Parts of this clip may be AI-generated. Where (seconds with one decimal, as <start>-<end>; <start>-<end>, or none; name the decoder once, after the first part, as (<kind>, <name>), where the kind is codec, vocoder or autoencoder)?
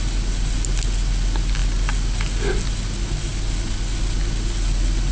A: none